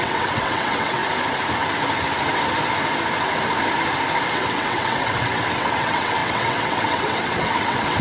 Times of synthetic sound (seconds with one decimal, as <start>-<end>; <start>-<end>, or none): 0.0-1.0; 4.3-8.0